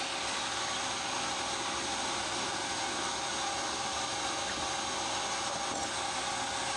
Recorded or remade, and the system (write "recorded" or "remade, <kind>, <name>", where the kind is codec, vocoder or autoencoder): recorded